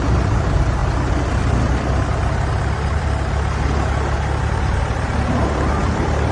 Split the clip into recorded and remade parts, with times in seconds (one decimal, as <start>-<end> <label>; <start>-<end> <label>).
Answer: 0.0-0.8 remade; 0.8-4.4 recorded; 4.4-6.3 remade